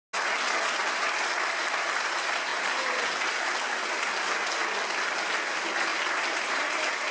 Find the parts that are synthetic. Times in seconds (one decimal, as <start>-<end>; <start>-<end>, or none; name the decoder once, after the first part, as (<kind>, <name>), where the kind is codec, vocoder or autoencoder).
2.5-3.4 (vocoder, BigVGAN v2); 5.9-7.1